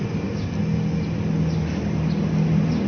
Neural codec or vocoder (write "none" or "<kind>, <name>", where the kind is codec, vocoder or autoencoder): none